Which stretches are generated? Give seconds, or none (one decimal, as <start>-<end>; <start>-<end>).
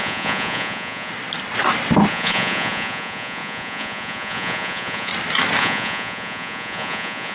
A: 0.0-1.1; 2.1-5.1; 5.6-7.3